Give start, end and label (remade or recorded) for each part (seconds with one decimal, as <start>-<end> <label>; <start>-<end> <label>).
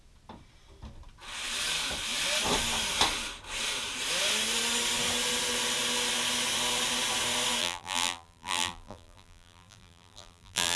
0.0-7.6 recorded; 7.6-10.8 remade